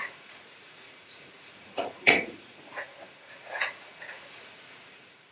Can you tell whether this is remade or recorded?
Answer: remade